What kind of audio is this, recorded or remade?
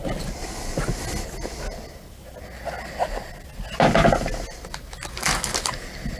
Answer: recorded